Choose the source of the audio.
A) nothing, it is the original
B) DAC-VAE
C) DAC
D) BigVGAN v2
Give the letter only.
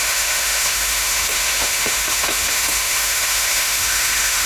B